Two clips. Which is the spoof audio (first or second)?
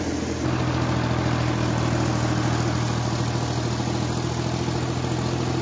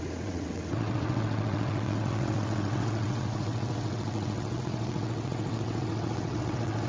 second